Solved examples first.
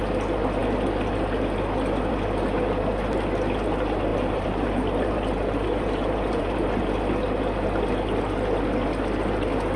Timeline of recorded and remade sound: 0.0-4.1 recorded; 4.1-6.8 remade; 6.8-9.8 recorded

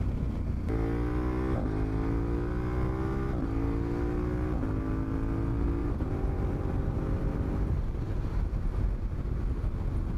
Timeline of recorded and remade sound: 0.0-5.8 recorded; 5.8-8.7 remade; 8.7-10.2 recorded

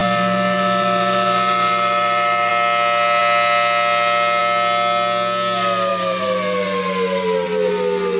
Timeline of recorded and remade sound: 0.0-2.5 remade; 2.5-5.9 recorded; 5.9-7.7 remade; 7.7-8.2 recorded

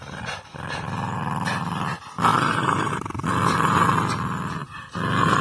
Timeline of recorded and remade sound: 0.0-2.3 recorded; 2.3-2.9 remade; 2.9-5.4 recorded

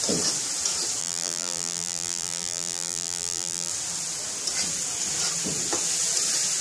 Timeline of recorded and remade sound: 0.0-1.0 recorded; 1.0-3.7 remade; 3.7-6.6 recorded